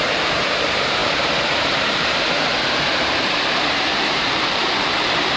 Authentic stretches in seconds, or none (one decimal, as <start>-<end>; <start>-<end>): none